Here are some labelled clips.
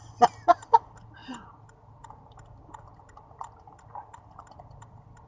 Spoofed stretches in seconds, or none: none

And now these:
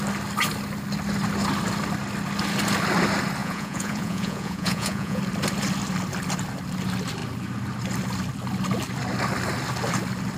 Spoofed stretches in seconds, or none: 3.4-5.2 (vocoder, Vocos)